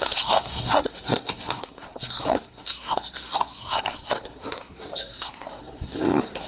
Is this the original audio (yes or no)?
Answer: no